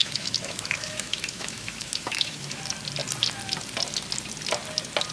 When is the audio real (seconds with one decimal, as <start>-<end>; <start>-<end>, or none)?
2.6-5.1